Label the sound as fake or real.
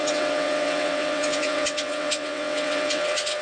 fake